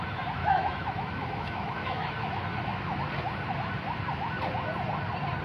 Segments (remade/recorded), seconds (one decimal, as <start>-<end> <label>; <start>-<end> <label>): 0.0-0.4 recorded; 0.4-3.0 remade; 3.0-5.4 recorded